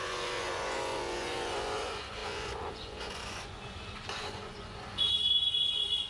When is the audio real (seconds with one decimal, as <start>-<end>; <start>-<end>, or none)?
none